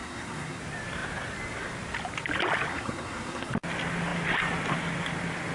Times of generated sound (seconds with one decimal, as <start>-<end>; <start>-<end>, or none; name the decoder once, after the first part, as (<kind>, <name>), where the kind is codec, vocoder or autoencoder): 0.0-0.6 (codec, SNAC); 2.7-3.5